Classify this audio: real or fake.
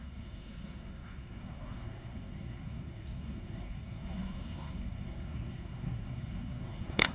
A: fake